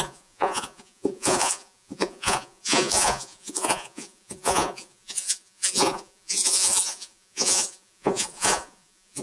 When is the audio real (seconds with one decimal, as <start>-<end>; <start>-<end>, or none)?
none